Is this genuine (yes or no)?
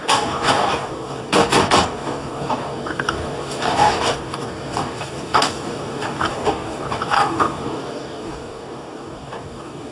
no